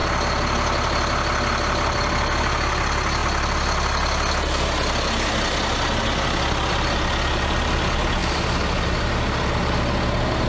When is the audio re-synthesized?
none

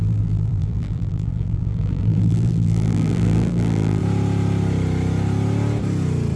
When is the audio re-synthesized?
0.0-4.0

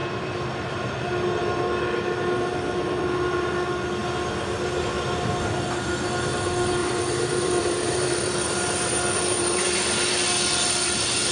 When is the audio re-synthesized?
0.0-0.5; 6.8-10.2

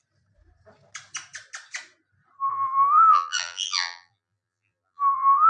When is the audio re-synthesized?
2.5-5.5

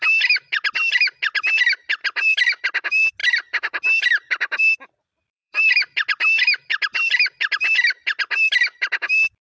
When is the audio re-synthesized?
2.0-2.6; 3.2-5.7

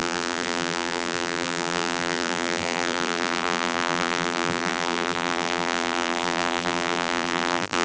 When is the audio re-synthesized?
0.0-7.8

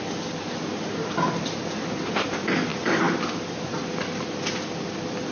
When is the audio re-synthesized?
2.7-4.7